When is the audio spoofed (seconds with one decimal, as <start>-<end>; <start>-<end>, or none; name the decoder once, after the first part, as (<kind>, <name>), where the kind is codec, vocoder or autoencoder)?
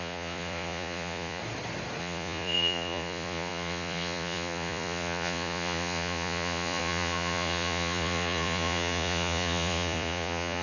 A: 0.0-1.4 (vocoder, Vocos); 2.0-10.6